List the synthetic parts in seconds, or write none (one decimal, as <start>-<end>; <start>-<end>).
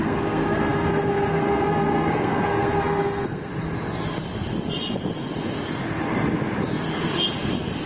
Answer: 0.0-3.5